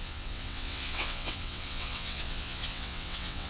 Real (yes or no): no